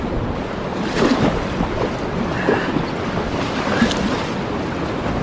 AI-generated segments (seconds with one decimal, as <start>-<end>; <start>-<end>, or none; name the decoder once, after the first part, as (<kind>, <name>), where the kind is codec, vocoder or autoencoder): 0.7-3.8 (vocoder, BigVGAN v2)